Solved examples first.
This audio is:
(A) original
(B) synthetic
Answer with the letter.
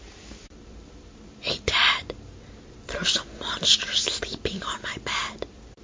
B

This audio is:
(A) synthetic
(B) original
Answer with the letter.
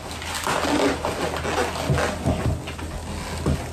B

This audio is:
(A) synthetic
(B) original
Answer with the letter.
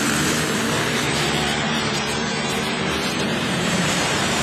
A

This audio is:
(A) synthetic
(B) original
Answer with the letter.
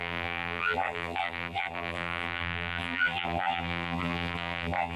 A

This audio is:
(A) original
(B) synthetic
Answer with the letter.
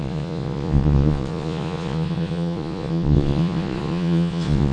B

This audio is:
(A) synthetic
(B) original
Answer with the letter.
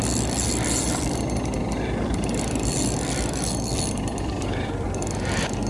A